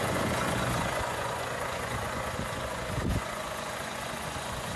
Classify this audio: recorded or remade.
remade